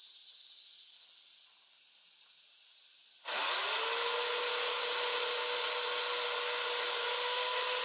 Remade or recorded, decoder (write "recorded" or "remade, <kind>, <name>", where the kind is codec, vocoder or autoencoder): recorded